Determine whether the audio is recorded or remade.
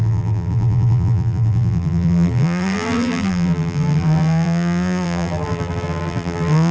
remade